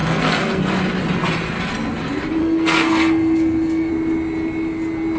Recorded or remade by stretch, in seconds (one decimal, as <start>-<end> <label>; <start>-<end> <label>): 0.0-0.6 remade; 0.6-2.4 recorded; 2.4-3.9 remade; 3.9-5.2 recorded